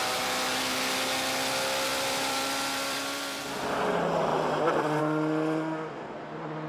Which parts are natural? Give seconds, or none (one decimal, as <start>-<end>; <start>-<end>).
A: 0.0-1.9; 3.4-4.3; 5.0-6.7